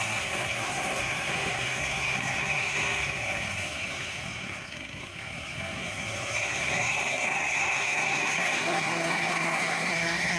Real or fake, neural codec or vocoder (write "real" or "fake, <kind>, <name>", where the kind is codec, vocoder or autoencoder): fake, codec, SNAC